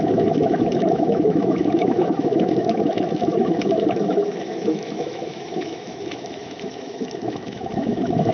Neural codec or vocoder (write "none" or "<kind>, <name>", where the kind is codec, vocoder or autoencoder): autoencoder, DAC-VAE